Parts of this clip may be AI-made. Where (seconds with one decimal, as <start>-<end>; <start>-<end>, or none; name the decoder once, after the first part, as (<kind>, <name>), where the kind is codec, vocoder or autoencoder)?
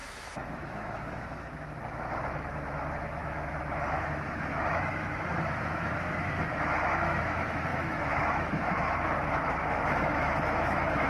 0.0-11.1 (autoencoder, DAC-VAE)